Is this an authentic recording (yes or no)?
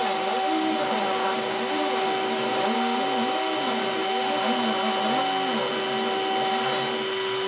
yes